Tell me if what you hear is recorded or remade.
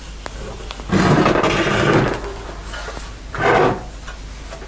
recorded